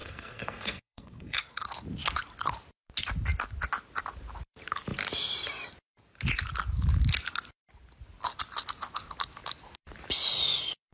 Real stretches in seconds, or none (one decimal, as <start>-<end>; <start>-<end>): 1.6-10.9